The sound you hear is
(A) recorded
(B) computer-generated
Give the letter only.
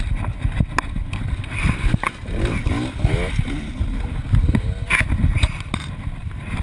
A